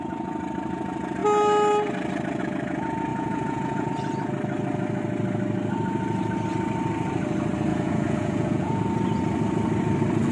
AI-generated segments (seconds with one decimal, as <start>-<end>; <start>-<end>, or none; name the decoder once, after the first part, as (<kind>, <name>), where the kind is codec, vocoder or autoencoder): 3.1-3.9 (vocoder, Vocos); 7.7-8.8